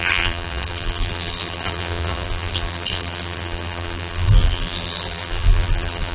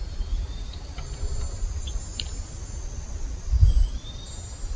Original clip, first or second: second